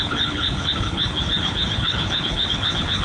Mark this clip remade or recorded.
remade